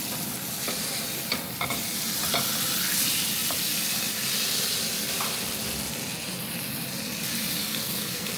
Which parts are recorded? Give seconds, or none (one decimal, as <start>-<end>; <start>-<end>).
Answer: 0.0-7.6